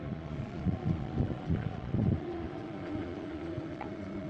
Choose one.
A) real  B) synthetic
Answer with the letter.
B